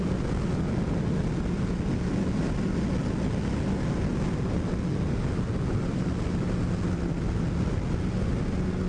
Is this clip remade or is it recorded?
recorded